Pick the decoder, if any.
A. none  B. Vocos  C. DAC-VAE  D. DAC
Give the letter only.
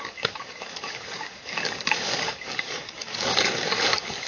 D